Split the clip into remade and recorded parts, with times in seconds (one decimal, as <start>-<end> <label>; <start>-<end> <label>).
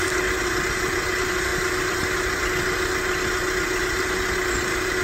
0.0-5.0 recorded